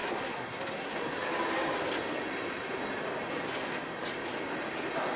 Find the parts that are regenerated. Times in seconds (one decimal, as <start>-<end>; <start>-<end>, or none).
0.0-1.0